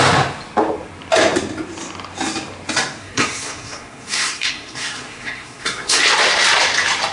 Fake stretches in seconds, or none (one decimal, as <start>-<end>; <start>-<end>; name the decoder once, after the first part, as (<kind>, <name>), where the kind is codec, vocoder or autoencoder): 3.0-6.0 (codec, SNAC)